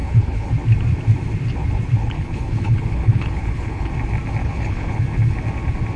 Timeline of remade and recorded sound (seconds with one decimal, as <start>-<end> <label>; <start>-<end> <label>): 0.0-0.5 remade; 0.5-2.0 recorded; 2.0-3.9 remade; 3.9-4.4 recorded; 4.4-5.0 remade; 5.0-6.0 recorded